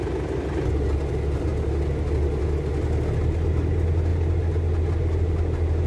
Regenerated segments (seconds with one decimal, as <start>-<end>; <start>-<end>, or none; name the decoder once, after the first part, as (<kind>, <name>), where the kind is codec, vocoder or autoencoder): none